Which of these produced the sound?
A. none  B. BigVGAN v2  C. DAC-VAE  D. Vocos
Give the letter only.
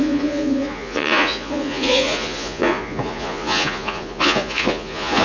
D